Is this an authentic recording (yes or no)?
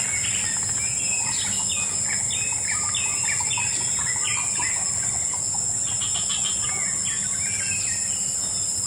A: yes